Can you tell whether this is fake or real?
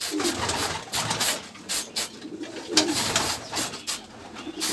real